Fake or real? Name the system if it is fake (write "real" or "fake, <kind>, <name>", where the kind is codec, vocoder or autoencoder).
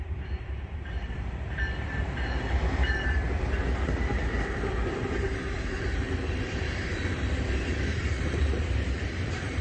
fake, vocoder, BigVGAN v2